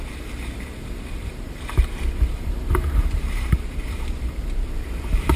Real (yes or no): no